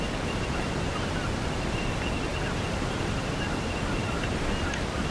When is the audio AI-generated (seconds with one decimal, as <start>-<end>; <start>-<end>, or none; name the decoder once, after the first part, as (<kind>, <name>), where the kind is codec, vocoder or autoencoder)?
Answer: none